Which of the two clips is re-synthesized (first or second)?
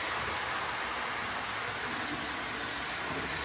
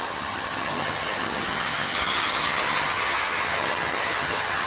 second